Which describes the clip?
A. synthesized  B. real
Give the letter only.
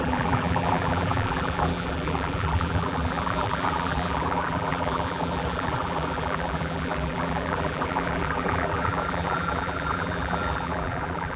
A